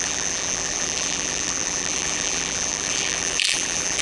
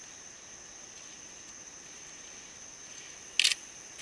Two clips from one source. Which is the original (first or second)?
second